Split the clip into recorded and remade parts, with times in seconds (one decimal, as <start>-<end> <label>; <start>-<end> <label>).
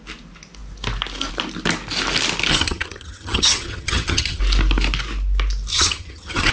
0.0-2.5 recorded; 2.5-4.4 remade; 4.4-5.7 recorded; 5.7-6.5 remade